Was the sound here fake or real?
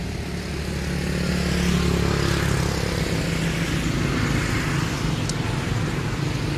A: real